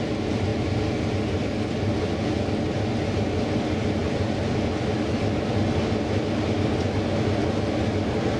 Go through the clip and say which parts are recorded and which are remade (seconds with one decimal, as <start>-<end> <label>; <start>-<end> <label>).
0.0-8.4 recorded